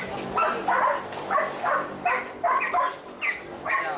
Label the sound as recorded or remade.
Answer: recorded